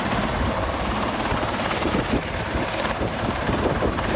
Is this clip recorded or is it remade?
remade